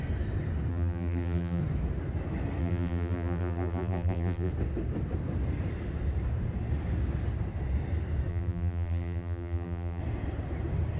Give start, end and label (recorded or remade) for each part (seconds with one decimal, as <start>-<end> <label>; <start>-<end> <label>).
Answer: 0.0-0.7 recorded; 0.7-1.6 remade; 1.6-2.6 recorded; 2.6-4.5 remade; 4.5-8.3 recorded; 8.3-10.0 remade; 10.0-11.0 recorded